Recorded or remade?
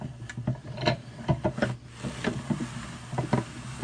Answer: recorded